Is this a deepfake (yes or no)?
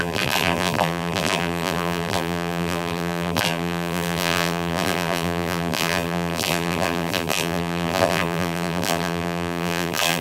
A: yes